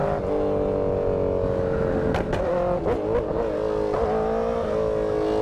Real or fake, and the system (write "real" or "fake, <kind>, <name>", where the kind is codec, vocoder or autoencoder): real